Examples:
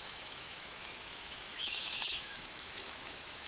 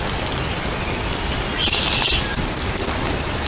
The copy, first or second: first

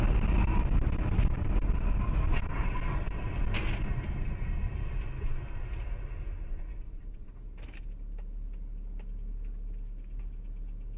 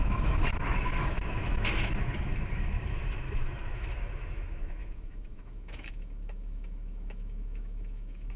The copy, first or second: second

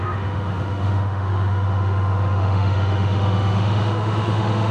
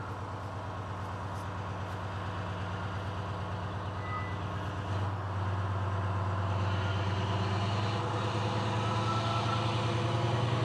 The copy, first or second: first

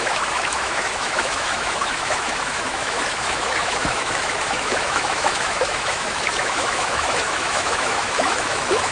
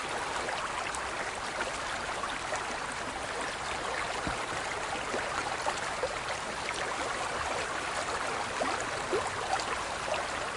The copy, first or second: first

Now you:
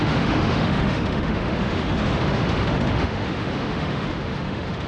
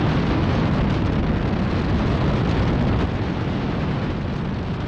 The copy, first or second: first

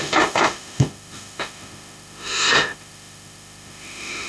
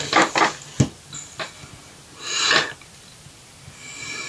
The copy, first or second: first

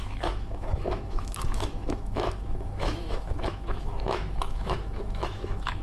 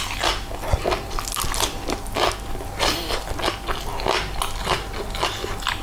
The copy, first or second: first